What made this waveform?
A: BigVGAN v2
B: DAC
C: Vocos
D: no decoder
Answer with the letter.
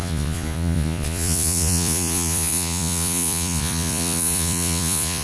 C